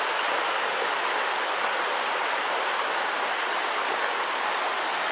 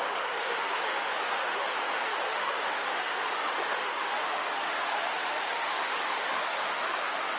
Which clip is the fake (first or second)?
second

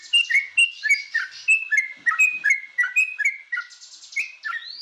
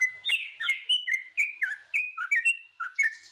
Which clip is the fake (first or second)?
second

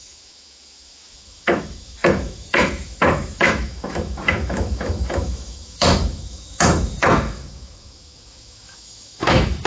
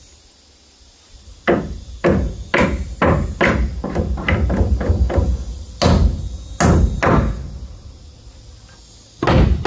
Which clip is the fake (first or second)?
first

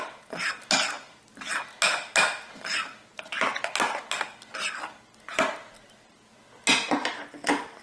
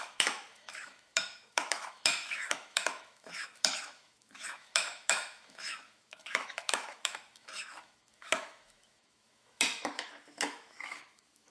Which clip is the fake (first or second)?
second